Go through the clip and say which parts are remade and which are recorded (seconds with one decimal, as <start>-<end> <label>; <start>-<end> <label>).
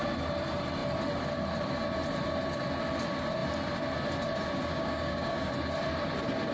0.0-4.7 recorded; 4.7-5.5 remade; 5.5-6.5 recorded